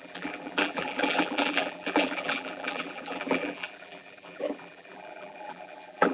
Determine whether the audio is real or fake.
fake